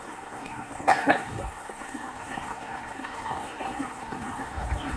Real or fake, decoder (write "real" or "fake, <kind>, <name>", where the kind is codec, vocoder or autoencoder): fake, codec, SNAC